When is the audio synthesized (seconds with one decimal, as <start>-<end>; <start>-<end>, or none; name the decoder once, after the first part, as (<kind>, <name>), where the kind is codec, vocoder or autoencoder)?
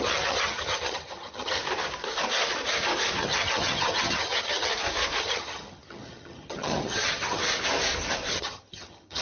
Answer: 0.0-1.6 (vocoder, HiFi-GAN); 3.2-4.7; 5.2-7.4; 8.3-9.2